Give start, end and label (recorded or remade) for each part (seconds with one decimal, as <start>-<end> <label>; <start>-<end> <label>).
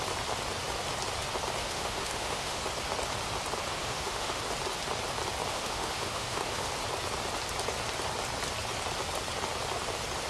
0.0-1.6 recorded; 1.6-2.6 remade; 2.6-3.8 recorded; 3.8-4.4 remade; 4.4-5.5 recorded; 5.5-6.7 remade; 6.7-10.3 recorded